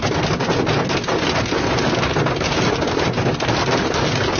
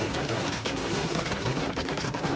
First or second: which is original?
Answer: first